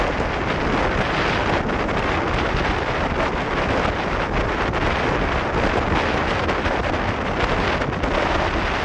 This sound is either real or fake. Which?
real